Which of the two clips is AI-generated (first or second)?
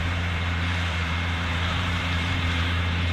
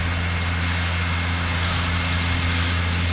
first